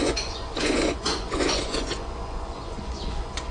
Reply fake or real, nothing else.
fake